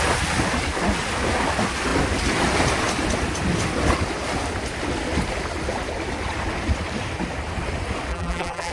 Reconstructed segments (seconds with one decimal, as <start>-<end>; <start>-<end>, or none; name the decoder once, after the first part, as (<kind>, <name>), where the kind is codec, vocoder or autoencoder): 8.1-8.7 (vocoder, BigVGAN v2)